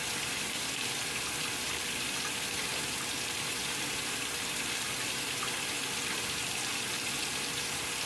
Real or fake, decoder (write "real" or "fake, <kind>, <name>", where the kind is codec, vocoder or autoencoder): fake, vocoder, BigVGAN v2